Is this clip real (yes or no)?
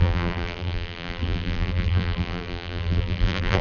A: no